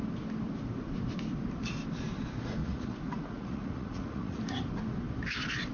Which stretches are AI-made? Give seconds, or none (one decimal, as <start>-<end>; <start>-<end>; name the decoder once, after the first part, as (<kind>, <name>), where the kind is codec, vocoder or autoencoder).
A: 2.6-4.4 (vocoder, Vocos)